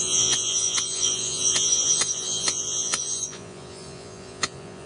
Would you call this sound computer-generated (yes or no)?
yes